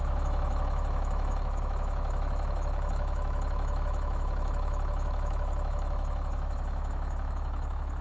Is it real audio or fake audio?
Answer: fake